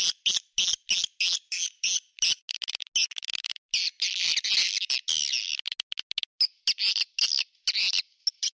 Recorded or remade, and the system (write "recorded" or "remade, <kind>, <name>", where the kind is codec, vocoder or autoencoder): recorded